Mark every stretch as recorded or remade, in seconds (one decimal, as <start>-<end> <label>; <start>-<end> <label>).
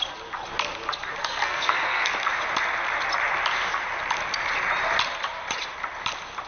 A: 0.0-1.2 recorded; 1.2-2.1 remade; 2.1-6.5 recorded